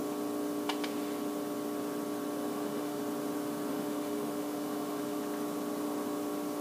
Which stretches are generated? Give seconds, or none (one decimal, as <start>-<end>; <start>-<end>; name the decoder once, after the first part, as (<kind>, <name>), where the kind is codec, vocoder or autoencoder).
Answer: 2.5-3.0 (autoencoder, DAC-VAE); 3.7-5.2